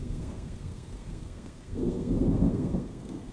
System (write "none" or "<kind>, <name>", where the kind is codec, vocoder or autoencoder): codec, SNAC